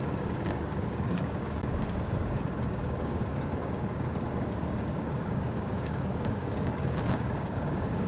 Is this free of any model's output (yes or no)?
no